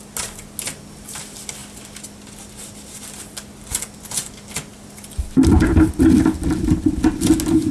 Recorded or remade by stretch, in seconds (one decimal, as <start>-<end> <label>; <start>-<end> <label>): 0.0-7.7 recorded